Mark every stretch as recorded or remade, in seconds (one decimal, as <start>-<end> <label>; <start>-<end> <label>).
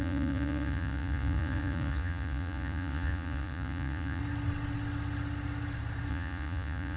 0.0-4.2 remade; 4.2-6.1 recorded; 6.1-7.0 remade